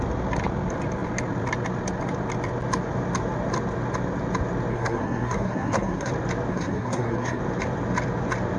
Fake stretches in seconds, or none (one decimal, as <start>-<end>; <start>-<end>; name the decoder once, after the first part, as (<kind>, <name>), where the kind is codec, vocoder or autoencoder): 4.7-6.1 (codec, SNAC); 6.5-7.4

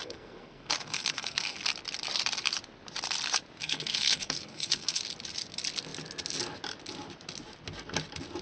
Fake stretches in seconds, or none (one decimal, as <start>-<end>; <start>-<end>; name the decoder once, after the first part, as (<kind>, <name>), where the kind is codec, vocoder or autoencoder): 0.0-1.6 (codec, SNAC); 3.6-5.0